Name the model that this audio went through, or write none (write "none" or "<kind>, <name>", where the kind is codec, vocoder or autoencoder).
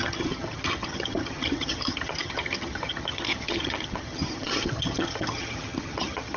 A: vocoder, HiFi-GAN